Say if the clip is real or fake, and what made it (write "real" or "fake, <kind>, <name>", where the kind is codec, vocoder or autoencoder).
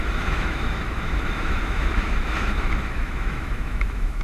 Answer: fake, autoencoder, DAC-VAE